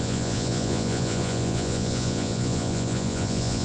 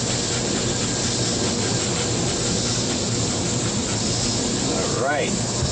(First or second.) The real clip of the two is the second